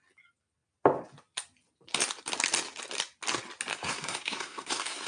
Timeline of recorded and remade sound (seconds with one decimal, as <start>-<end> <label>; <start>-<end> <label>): 0.0-3.7 recorded; 3.7-5.1 remade